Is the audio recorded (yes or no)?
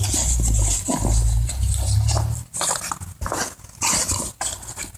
yes